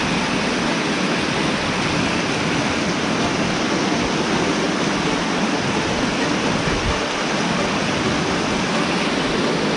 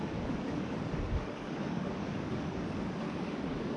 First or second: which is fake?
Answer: second